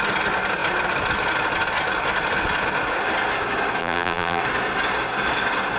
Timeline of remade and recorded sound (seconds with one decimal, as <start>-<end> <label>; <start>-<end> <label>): 0.0-3.8 recorded; 3.8-4.4 remade; 4.4-5.8 recorded

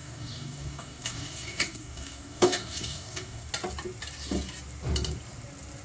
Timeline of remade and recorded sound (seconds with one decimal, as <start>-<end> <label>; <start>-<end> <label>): 0.0-3.5 remade; 3.5-5.8 recorded

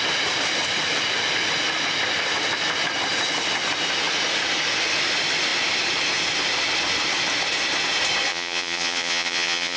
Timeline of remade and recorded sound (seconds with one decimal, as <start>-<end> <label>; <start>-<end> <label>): 0.0-8.3 recorded; 8.3-9.8 remade

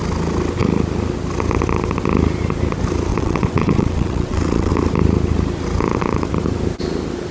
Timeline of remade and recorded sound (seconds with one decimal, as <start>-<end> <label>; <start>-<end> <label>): 0.0-3.1 recorded; 3.1-4.7 remade; 4.7-7.3 recorded

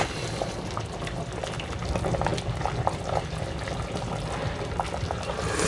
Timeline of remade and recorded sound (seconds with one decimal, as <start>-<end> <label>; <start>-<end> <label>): 0.0-5.7 recorded

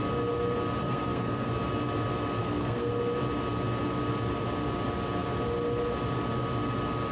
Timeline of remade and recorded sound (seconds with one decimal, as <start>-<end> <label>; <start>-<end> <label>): 0.0-0.8 recorded; 0.8-1.5 remade; 1.5-2.4 recorded; 2.4-2.9 remade; 2.9-7.1 recorded